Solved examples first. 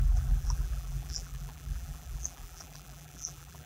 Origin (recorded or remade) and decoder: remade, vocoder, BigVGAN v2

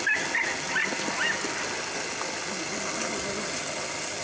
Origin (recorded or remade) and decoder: recorded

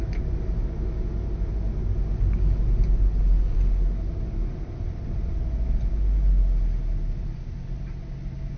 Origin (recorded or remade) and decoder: recorded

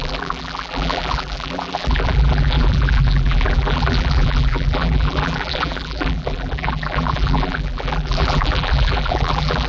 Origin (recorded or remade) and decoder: remade, vocoder, BigVGAN v2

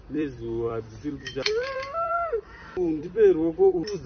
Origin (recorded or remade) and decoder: remade, vocoder, BigVGAN v2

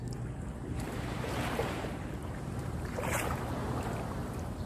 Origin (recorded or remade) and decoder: remade, vocoder, BigVGAN v2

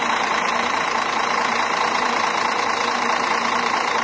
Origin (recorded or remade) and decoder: remade, vocoder, BigVGAN v2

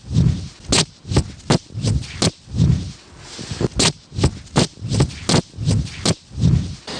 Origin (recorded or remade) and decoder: recorded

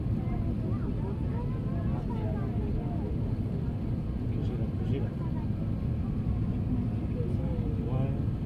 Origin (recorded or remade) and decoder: recorded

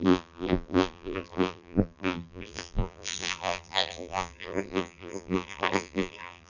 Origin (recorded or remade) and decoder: remade, vocoder, BigVGAN v2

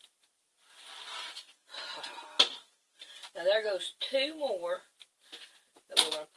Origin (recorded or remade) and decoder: recorded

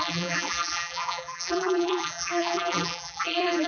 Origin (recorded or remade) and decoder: remade, vocoder, BigVGAN v2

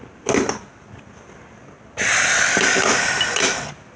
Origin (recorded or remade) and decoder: recorded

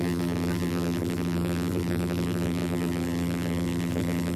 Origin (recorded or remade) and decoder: remade, vocoder, BigVGAN v2